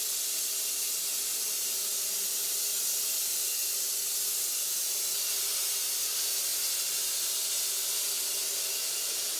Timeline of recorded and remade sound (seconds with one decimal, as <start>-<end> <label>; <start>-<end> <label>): 0.0-9.4 recorded